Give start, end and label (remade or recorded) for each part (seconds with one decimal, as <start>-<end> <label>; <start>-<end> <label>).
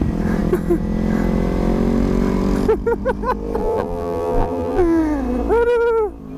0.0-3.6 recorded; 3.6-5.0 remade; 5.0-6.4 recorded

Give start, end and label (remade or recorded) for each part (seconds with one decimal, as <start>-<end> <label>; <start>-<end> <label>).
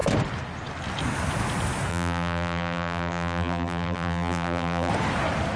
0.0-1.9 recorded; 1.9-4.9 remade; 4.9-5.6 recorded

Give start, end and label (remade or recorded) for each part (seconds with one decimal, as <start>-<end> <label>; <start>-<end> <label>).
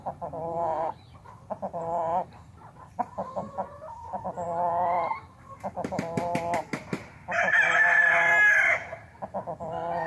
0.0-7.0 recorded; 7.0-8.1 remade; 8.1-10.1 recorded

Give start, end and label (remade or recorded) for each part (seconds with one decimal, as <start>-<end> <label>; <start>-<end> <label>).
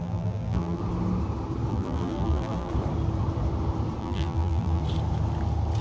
0.0-0.8 remade; 0.8-1.7 recorded; 1.7-2.7 remade; 2.7-4.0 recorded; 4.0-4.8 remade; 4.8-5.8 recorded